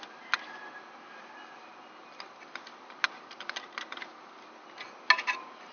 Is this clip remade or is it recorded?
recorded